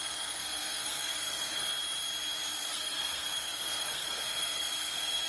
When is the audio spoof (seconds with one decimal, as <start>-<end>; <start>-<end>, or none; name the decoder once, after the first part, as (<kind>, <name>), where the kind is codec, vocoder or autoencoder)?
0.0-1.7 (codec, SNAC); 2.6-5.3

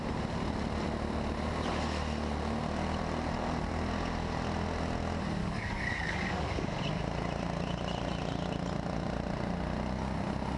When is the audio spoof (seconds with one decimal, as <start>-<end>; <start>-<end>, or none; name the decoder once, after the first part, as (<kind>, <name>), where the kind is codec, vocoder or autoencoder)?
5.4-6.8 (codec, DAC)

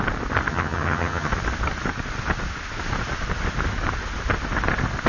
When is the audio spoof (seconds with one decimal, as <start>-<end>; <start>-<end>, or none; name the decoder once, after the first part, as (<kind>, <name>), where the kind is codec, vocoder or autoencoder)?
0.5-1.3 (vocoder, HiFi-GAN)

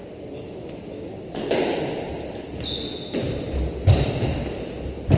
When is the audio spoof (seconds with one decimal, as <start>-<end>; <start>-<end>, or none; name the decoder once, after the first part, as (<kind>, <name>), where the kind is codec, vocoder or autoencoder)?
none

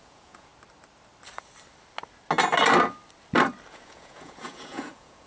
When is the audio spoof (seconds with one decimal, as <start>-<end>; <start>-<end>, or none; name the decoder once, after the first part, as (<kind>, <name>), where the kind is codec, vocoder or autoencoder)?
0.0-0.5 (vocoder, Vocos); 3.7-5.3

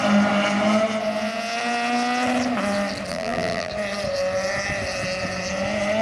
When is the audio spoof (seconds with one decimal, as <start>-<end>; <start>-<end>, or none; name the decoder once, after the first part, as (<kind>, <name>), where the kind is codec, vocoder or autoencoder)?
3.1-3.7 (vocoder, BigVGAN v2)

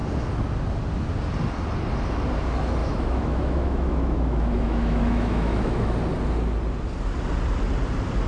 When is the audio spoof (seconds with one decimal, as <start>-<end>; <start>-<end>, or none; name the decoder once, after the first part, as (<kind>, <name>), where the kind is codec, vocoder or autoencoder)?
2.8-5.9 (autoencoder, DAC-VAE)